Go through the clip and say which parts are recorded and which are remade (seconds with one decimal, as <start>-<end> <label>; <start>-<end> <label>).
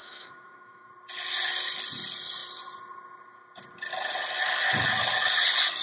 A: 0.0-0.9 remade; 0.9-5.8 recorded